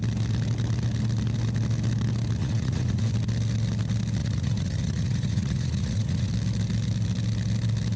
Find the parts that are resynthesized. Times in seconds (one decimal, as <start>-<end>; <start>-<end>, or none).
2.4-3.1; 4.2-6.3